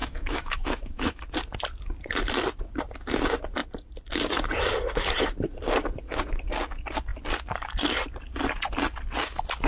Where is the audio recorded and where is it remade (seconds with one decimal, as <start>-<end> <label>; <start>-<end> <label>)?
0.0-1.2 remade; 1.2-9.7 recorded